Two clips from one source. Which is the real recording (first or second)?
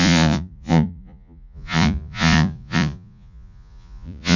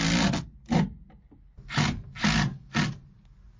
second